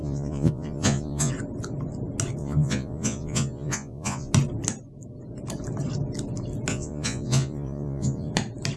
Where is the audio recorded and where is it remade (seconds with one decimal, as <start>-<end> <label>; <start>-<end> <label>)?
0.0-1.3 remade; 1.3-2.4 recorded; 2.4-4.3 remade; 4.3-6.7 recorded; 6.7-8.3 remade; 8.3-8.8 recorded